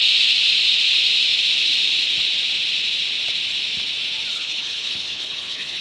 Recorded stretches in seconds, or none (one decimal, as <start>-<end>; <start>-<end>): 0.0-4.3

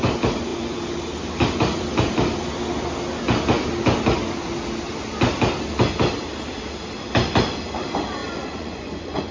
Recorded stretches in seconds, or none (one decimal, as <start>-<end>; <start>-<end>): 0.0-8.2

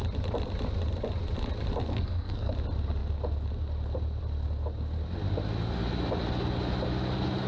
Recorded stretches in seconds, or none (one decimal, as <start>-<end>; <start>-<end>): 0.0-1.9; 2.5-7.5